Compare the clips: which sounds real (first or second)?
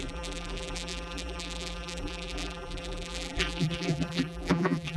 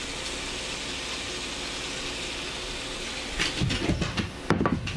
second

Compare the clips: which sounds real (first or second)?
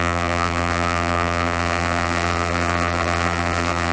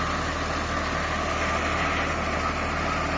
second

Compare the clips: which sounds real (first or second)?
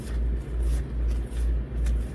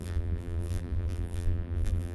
first